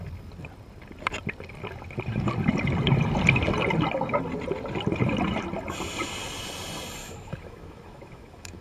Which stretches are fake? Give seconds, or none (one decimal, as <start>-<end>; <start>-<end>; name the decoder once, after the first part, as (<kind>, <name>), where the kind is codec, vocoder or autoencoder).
7.0-8.6 (autoencoder, DAC-VAE)